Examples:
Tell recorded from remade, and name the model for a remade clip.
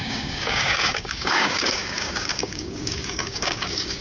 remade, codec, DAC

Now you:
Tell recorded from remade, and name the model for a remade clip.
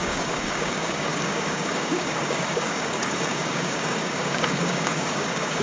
remade, codec, DAC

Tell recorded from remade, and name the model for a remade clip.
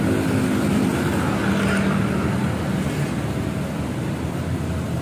recorded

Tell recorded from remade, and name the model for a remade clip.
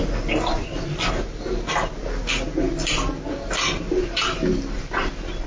recorded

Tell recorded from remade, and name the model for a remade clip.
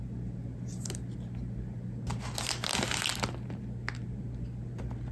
recorded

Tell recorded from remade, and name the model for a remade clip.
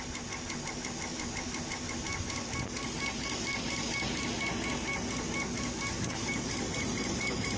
recorded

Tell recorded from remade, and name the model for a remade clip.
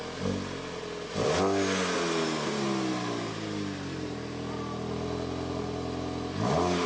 recorded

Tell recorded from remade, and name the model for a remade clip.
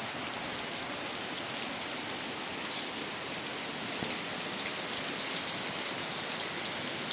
recorded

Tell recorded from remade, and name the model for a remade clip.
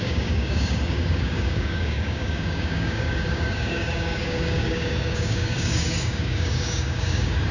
remade, codec, DAC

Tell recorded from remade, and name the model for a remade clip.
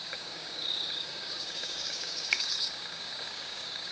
remade, codec, DAC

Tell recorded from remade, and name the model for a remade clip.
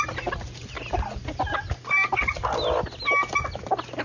recorded